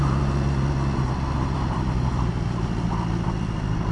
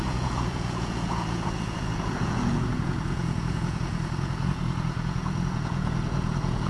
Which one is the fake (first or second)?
second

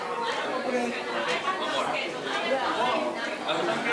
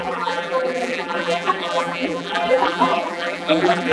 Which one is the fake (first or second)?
second